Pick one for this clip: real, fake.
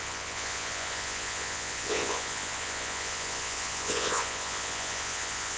fake